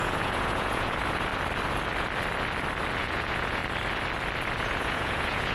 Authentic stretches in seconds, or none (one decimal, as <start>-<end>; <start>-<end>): 1.3-3.0; 3.6-4.6